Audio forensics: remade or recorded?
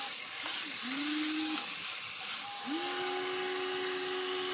recorded